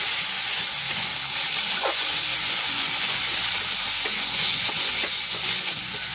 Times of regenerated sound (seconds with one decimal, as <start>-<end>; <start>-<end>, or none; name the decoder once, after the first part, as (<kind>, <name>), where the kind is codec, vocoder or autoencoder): 0.0-1.1 (vocoder, Vocos); 1.7-3.3; 3.9-6.1